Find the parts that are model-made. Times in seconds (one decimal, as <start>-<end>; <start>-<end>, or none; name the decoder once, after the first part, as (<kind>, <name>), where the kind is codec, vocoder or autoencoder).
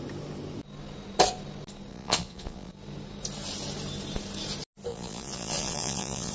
1.9-2.7 (vocoder, Vocos); 4.9-6.3